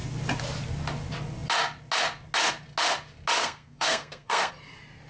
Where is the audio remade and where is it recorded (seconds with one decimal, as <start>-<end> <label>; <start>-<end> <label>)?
0.0-3.4 recorded; 3.4-4.5 remade; 4.5-5.1 recorded